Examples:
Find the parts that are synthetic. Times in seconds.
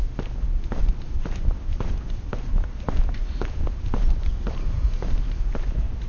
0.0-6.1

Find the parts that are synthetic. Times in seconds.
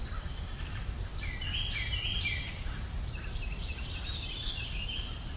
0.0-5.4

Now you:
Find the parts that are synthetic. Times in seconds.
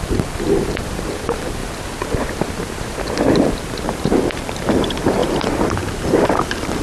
0.0-1.6; 3.6-6.8